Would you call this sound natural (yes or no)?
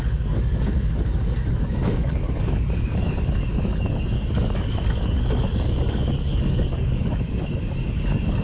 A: no